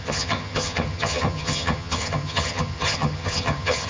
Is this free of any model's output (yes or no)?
no